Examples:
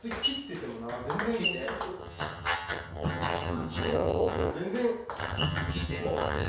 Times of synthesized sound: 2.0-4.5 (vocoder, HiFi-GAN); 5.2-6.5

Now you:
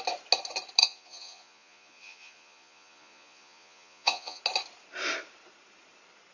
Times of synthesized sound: 0.8-4.4 (vocoder, Vocos)

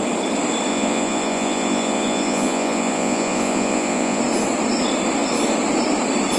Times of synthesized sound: 0.7-4.2 (vocoder, Vocos)

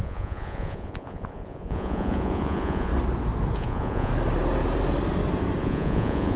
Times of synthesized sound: 0.0-2.9 (vocoder, Vocos); 3.5-4.1; 5.6-6.4

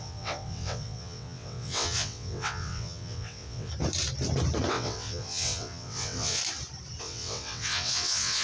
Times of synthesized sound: 0.0-3.7 (vocoder, WaveNeXt); 4.7-6.4; 7.0-8.4

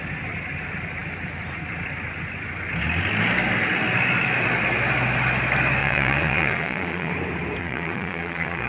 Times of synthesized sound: 5.8-7.1 (vocoder, Vocos); 7.6-8.7